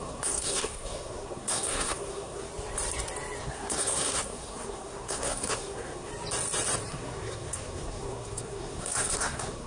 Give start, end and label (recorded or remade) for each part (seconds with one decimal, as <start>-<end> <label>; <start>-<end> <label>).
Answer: 0.0-2.5 remade; 2.5-3.4 recorded; 3.4-6.1 remade; 6.1-6.9 recorded; 6.9-9.7 remade